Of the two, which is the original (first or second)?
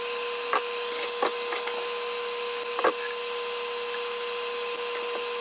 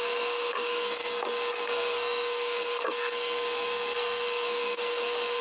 first